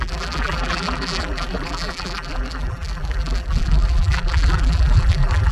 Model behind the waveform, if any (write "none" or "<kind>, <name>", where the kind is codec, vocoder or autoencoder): vocoder, BigVGAN v2